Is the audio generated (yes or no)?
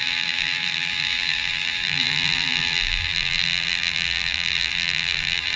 yes